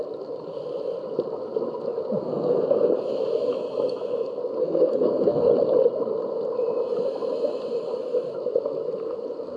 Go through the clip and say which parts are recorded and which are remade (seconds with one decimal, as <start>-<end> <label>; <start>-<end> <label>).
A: 0.0-2.2 recorded; 2.2-2.9 remade; 2.9-4.6 recorded; 4.6-5.5 remade; 5.5-9.6 recorded